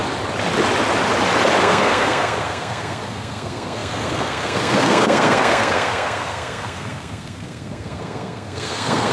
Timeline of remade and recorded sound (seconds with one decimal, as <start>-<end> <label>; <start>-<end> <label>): 0.0-1.6 recorded; 1.6-9.1 remade